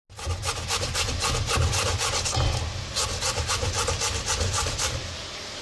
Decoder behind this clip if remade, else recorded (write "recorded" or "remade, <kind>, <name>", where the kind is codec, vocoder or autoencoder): recorded